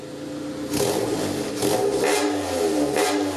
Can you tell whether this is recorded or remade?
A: recorded